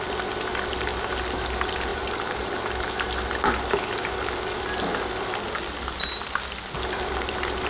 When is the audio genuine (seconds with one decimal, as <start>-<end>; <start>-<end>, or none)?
0.0-1.9; 2.6-7.7